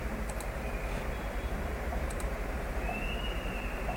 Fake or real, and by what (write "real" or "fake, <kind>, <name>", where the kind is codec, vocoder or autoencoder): fake, vocoder, BigVGAN v2